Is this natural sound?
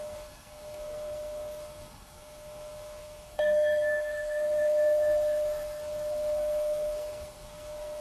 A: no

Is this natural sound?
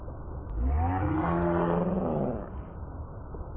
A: yes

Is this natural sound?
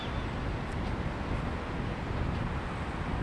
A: yes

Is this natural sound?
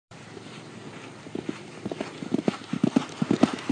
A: no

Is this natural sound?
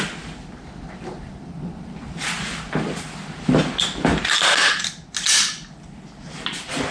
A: yes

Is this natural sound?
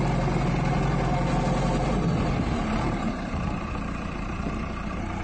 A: no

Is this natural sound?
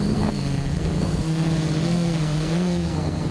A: no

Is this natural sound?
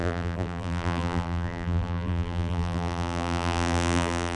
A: no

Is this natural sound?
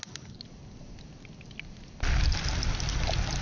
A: yes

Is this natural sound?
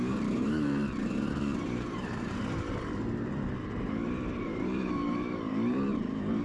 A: no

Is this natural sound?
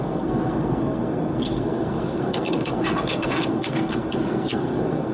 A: no